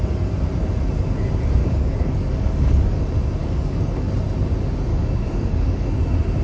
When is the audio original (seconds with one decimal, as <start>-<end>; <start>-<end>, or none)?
0.0-1.6; 3.0-3.4; 4.1-4.9; 6.0-6.4